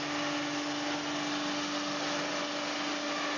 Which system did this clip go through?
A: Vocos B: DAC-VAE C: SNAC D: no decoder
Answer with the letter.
D